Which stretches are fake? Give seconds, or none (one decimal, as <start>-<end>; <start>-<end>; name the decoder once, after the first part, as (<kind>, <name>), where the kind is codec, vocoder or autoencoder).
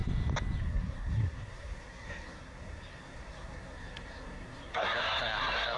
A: 0.6-5.8 (codec, SNAC)